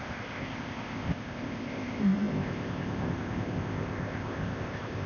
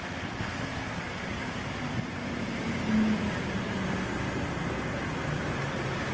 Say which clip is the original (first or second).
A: second